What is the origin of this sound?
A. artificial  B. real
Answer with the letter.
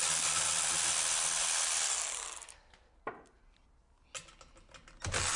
B